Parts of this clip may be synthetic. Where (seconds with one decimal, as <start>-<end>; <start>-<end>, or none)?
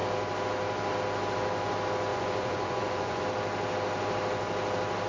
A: 2.1-3.2